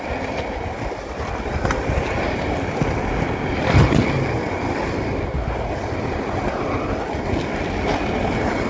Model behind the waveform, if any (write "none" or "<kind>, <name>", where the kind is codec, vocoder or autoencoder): none